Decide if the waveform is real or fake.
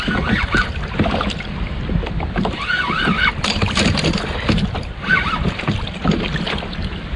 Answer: fake